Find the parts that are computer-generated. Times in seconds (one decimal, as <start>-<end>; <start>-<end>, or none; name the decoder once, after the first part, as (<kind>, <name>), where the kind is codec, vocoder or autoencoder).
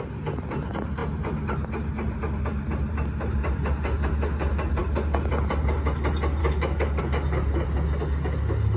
6.4-7.0 (codec, DAC)